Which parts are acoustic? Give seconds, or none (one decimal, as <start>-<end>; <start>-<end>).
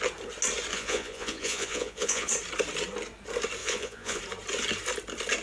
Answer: 0.0-0.7; 2.3-3.6; 4.2-5.4